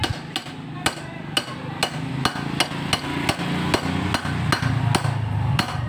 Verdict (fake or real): real